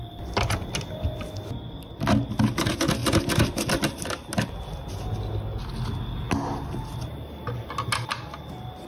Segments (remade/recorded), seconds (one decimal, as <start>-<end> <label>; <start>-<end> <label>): 0.0-3.0 recorded; 3.0-3.7 remade; 3.7-8.9 recorded